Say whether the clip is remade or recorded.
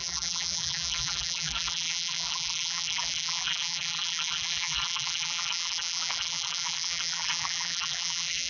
remade